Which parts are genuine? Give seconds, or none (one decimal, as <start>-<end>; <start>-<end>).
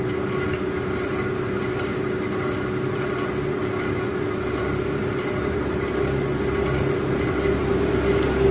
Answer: 0.0-8.5